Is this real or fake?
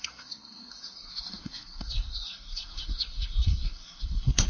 fake